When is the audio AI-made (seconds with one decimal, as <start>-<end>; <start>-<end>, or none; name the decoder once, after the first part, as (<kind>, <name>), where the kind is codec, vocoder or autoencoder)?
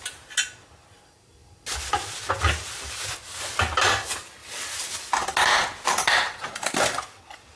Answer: none